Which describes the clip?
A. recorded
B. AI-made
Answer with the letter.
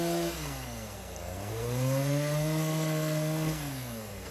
B